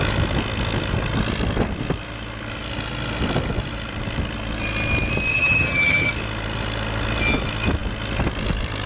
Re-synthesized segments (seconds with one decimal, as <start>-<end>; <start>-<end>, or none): 5.3-6.1